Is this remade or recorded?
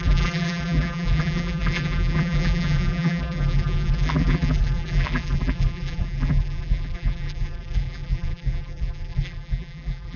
remade